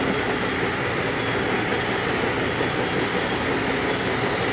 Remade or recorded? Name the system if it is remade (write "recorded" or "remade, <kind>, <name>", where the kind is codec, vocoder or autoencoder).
recorded